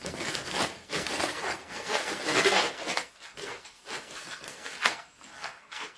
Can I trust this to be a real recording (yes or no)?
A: no